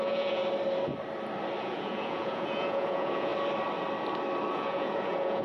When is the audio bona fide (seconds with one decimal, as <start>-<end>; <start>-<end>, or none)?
0.4-1.6; 3.3-4.5